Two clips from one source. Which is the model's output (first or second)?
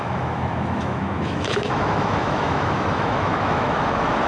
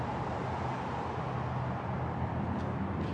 first